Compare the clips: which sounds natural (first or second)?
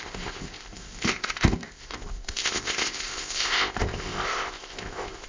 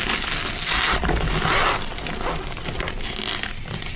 second